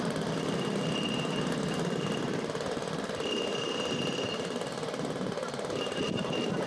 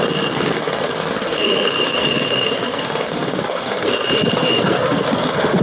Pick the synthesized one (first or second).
second